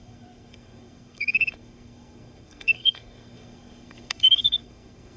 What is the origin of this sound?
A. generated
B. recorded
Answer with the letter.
A